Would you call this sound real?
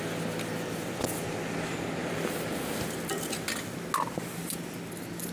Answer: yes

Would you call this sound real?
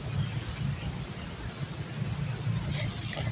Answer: yes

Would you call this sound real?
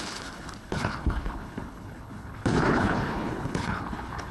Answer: no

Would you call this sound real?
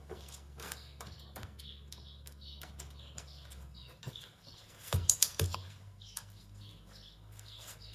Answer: no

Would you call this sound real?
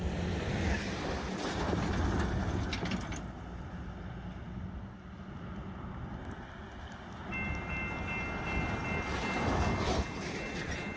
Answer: yes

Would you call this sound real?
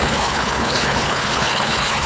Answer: no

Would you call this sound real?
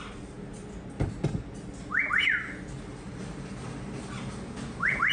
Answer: yes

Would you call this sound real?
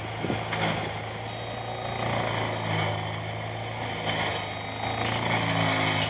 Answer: yes